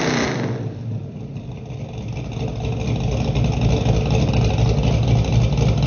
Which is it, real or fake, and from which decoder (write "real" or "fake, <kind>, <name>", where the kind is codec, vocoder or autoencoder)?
real